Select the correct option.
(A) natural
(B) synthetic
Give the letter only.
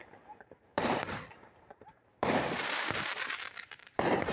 B